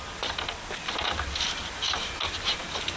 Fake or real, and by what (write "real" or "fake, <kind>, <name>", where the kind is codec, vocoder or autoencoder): real